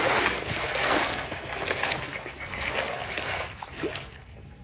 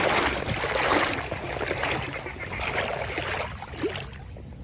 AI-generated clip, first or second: first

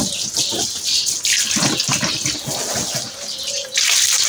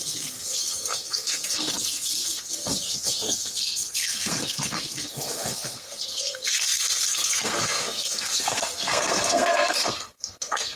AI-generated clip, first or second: second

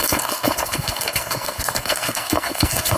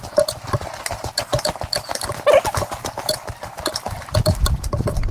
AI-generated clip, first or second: first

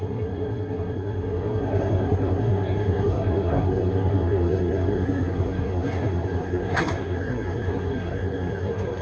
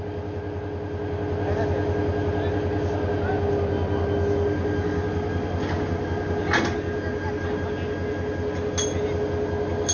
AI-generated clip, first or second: first